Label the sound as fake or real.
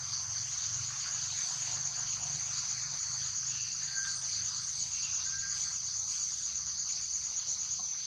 real